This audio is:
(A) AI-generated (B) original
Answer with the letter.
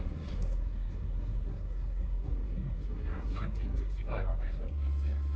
A